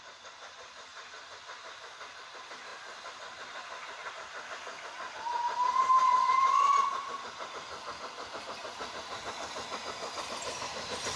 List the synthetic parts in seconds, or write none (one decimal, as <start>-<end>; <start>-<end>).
0.0-8.8; 10.2-11.2